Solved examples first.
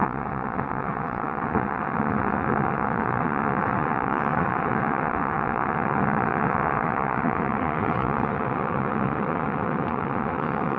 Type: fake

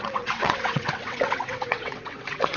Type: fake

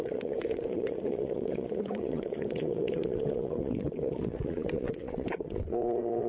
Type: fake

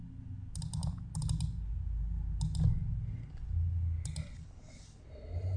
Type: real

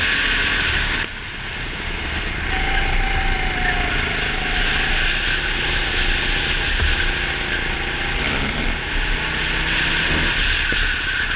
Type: real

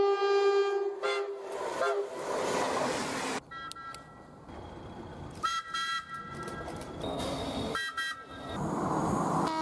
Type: real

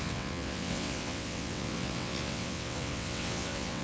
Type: fake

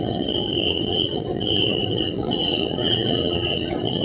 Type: fake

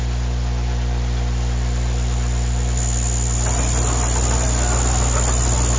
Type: real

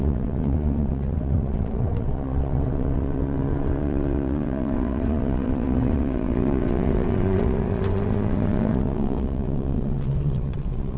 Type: fake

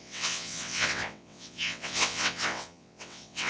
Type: fake